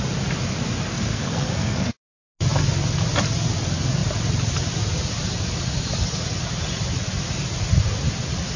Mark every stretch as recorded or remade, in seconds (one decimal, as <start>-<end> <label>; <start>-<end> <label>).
0.0-0.9 recorded; 0.9-2.0 remade; 2.0-8.6 recorded